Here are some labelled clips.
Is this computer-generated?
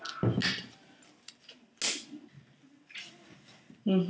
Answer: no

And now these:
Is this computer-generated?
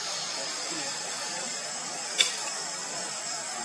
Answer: yes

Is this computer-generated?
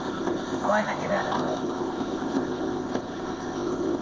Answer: yes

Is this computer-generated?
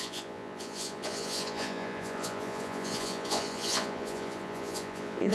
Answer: yes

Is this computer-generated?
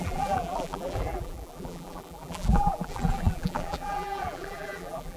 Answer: yes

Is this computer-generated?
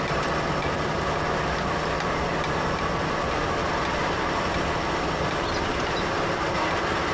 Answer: no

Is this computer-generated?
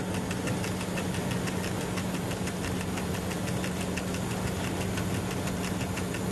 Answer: no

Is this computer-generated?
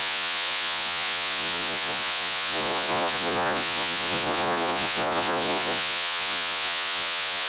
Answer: yes